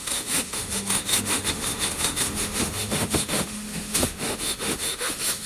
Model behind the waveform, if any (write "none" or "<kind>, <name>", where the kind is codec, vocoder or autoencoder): autoencoder, DAC-VAE